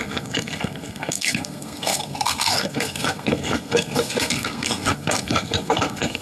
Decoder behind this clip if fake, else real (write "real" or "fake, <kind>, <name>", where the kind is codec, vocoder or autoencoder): fake, codec, SNAC